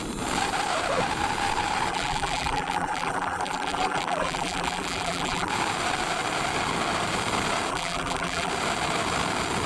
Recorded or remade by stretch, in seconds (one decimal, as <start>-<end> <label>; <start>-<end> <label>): 0.0-1.9 recorded; 1.9-5.5 remade; 5.5-7.7 recorded; 7.7-8.5 remade; 8.5-9.7 recorded